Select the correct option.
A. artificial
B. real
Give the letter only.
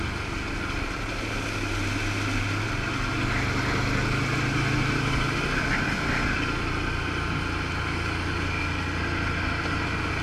B